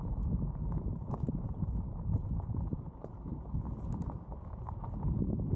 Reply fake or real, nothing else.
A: fake